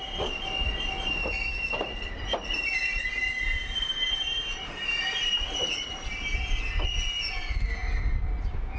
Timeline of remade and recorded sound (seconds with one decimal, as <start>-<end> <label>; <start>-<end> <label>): 0.0-8.8 recorded